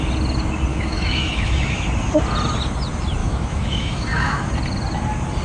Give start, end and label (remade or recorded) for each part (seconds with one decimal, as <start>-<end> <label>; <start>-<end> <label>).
0.0-0.7 recorded; 0.7-1.9 remade; 1.9-3.2 recorded; 3.2-4.5 remade; 4.5-5.4 recorded